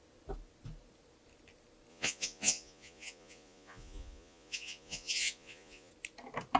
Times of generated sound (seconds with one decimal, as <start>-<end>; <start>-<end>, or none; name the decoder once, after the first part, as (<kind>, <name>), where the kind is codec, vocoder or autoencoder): 1.9-5.9 (vocoder, Vocos)